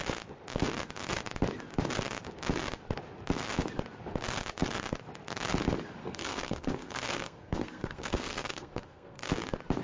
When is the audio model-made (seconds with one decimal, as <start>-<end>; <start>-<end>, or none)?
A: 6.0-9.3